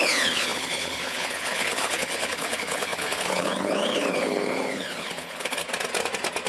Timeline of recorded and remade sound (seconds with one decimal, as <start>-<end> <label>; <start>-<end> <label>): 0.0-5.6 remade; 5.6-6.5 recorded